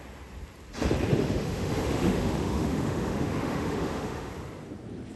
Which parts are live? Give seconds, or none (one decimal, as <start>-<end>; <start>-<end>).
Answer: 0.0-1.2; 4.3-5.2